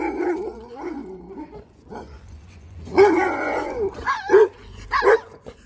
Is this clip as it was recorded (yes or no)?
no